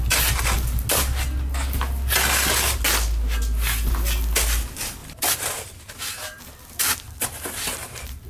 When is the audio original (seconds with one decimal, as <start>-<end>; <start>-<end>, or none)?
0.0-5.0; 6.4-8.3